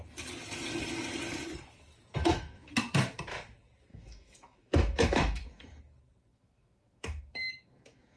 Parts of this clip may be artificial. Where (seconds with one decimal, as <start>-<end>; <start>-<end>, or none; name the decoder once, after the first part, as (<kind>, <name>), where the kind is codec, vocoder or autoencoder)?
2.2-2.7 (autoencoder, DAC-VAE); 3.9-5.8; 6.3-8.2